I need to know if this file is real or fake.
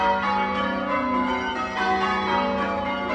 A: real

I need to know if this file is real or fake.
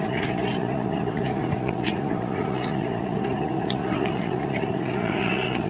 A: fake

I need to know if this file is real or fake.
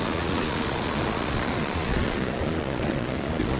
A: fake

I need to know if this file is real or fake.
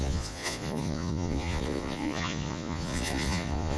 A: fake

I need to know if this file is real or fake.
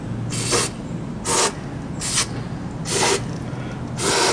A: real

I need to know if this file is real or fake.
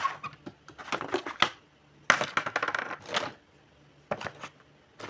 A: real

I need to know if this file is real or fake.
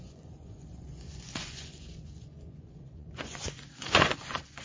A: fake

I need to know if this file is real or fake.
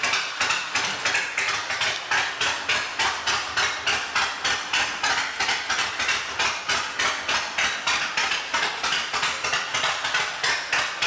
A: real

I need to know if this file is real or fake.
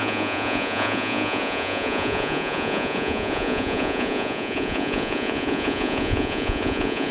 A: fake